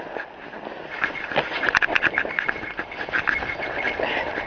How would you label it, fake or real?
real